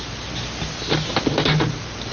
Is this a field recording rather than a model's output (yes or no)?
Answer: yes